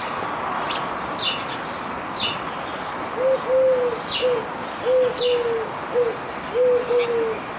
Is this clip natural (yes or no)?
yes